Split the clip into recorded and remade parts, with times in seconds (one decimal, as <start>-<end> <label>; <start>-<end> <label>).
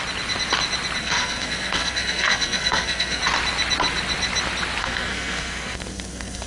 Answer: 0.0-1.0 recorded; 1.0-3.2 remade; 3.2-4.8 recorded; 4.8-6.5 remade